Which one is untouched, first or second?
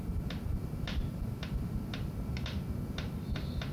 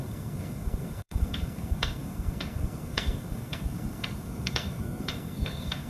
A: first